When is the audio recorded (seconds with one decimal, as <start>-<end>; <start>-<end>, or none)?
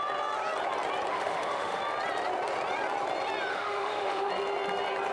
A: 0.0-1.1; 1.8-3.5; 4.3-5.1